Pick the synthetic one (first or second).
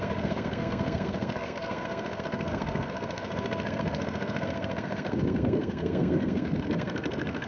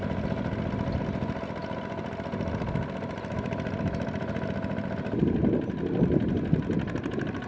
first